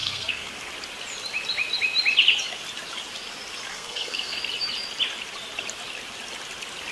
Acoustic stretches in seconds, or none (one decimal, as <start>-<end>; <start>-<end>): 0.5-3.7; 4.4-6.9